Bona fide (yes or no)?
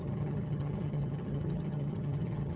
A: no